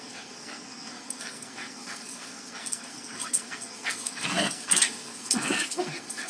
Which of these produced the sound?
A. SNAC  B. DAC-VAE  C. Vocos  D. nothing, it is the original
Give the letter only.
A